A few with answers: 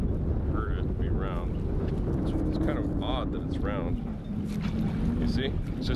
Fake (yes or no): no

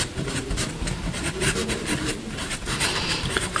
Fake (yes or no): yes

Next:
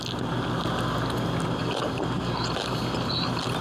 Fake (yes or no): no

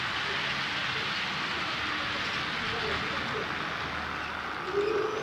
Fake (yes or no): no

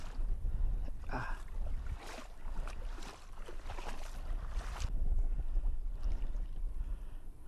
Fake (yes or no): yes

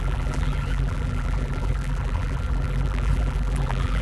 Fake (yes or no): yes